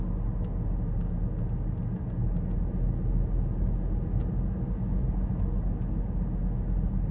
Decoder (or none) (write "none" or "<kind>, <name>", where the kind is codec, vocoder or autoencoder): none